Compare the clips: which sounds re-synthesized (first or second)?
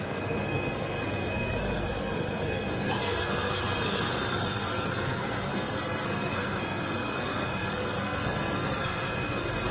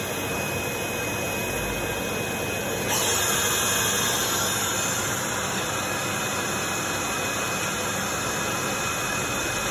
first